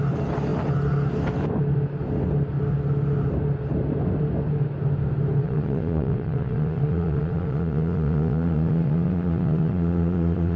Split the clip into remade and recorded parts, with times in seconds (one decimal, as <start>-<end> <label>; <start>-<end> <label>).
0.0-5.4 recorded; 5.4-10.6 remade